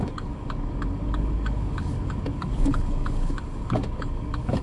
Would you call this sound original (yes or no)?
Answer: no